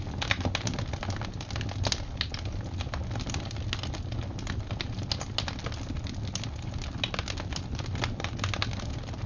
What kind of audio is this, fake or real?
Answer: real